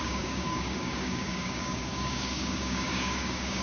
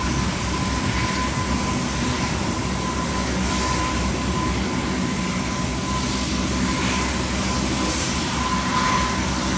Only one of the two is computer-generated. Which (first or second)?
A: first